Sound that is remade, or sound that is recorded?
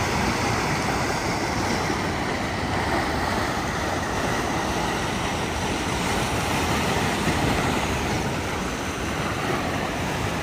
recorded